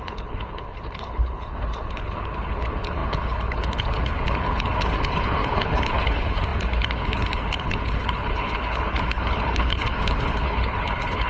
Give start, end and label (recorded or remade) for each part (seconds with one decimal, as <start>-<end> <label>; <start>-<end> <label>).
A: 0.0-11.3 remade